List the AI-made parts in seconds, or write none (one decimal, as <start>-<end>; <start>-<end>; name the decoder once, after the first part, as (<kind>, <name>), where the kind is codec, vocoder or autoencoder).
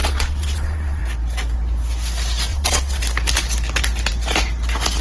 0.0-1.0 (vocoder, WaveNeXt); 2.5-3.0